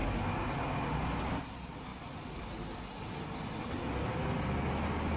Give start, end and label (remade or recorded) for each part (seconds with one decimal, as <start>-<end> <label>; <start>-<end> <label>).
0.0-5.2 recorded